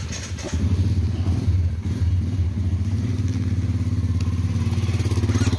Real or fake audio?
real